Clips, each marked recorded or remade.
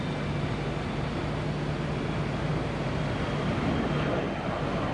recorded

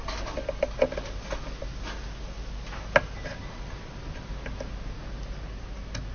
recorded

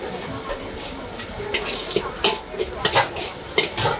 recorded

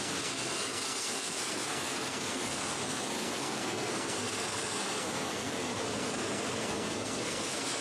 remade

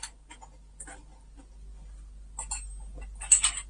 recorded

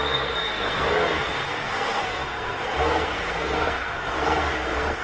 remade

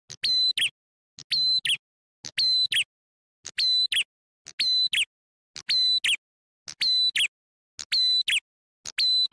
recorded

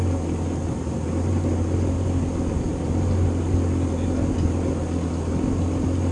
recorded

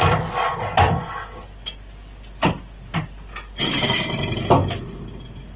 recorded